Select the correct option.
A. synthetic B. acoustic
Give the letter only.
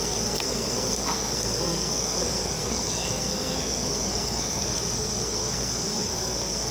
A